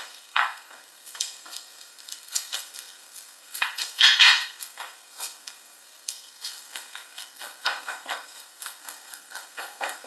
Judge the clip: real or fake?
fake